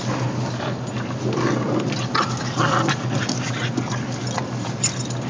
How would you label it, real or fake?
real